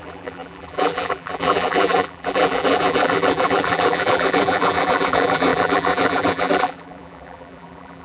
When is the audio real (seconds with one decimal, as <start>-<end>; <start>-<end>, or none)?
none